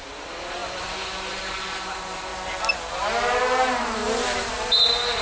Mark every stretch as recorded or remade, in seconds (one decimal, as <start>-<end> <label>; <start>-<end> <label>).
0.0-2.3 remade; 2.3-2.9 recorded; 2.9-5.2 remade